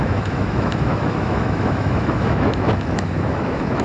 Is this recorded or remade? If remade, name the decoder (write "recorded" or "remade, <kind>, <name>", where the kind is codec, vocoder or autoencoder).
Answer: remade, autoencoder, DAC-VAE